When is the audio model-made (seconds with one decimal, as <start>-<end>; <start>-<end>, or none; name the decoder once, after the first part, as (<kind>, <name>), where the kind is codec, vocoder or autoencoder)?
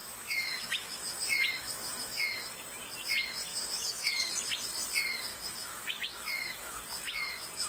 0.0-2.4 (autoencoder, DAC-VAE); 3.5-4.3; 5.3-6.8